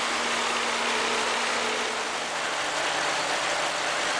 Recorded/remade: recorded